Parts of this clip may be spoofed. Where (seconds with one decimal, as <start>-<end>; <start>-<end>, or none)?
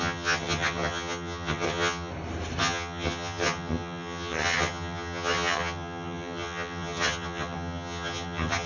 0.0-2.1; 2.6-8.7